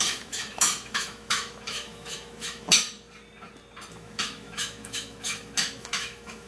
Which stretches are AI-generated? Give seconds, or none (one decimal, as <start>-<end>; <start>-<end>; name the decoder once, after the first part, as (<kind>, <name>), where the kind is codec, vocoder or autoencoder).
0.0-2.8 (autoencoder, DAC-VAE); 3.9-6.5